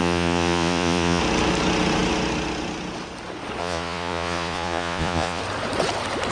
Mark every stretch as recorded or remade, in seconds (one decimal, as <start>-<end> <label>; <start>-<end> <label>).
0.0-1.2 remade; 1.2-3.6 recorded; 3.6-5.4 remade; 5.4-6.3 recorded